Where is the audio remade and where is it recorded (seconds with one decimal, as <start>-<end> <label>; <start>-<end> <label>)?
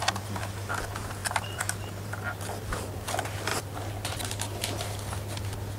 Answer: 0.0-1.2 recorded; 1.2-2.1 remade; 2.1-3.5 recorded; 3.5-4.1 remade; 4.1-5.8 recorded